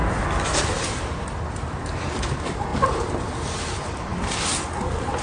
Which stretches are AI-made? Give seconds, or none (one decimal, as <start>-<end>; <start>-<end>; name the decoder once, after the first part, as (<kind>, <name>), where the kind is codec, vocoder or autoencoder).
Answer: none